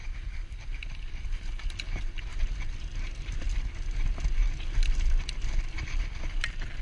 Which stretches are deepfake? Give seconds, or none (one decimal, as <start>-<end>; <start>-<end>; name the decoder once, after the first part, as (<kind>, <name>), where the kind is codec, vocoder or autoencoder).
none